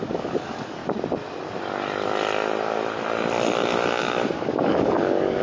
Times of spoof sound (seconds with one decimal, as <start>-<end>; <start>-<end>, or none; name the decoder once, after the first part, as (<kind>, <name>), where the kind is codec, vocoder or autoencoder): 0.0-0.8 (codec, DAC); 4.0-5.4